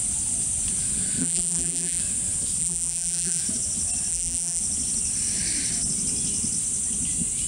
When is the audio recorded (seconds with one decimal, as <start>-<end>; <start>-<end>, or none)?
0.0-1.2; 2.0-2.6; 3.4-4.1; 4.6-7.5